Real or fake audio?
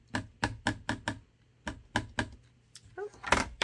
real